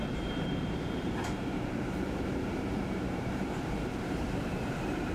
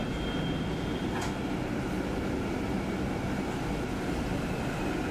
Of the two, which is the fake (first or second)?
first